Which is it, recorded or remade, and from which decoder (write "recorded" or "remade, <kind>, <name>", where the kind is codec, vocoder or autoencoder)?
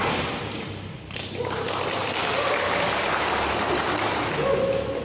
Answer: recorded